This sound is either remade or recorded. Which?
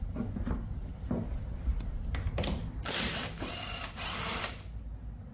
recorded